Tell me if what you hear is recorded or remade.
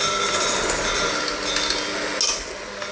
recorded